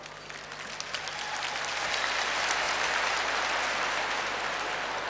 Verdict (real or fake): real